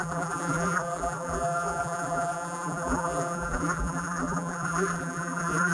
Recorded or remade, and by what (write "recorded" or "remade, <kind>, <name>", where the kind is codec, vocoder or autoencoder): remade, vocoder, BigVGAN v2